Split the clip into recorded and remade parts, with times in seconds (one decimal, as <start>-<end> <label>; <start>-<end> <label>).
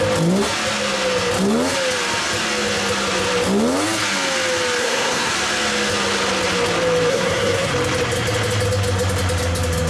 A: 0.0-4.8 recorded; 4.8-5.3 remade; 5.3-7.1 recorded; 7.1-7.7 remade; 7.7-9.9 recorded